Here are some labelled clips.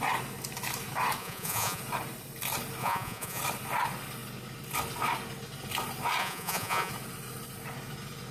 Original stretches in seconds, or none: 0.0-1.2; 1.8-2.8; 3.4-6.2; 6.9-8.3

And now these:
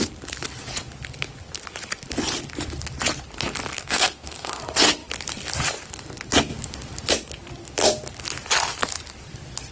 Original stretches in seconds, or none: 0.0-3.7; 4.6-9.7

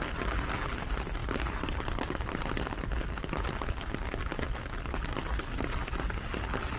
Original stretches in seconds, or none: 0.0-1.2; 1.8-6.8

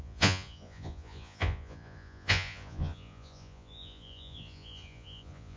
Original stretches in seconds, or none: none